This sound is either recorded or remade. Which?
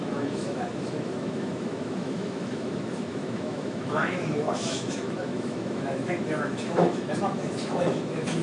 remade